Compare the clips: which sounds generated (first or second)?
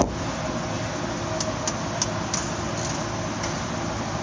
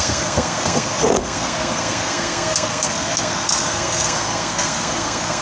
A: second